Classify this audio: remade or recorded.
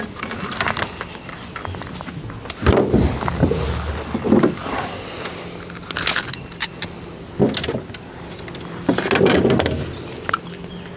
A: recorded